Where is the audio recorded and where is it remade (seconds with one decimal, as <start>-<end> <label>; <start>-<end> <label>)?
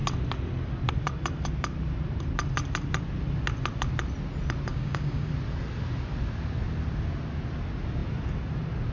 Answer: 0.0-4.7 recorded; 4.7-5.3 remade; 5.3-8.9 recorded